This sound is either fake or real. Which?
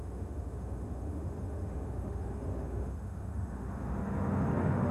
fake